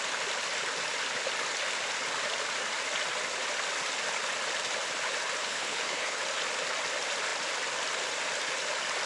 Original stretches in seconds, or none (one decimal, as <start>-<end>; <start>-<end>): 0.0-5.4; 6.2-9.1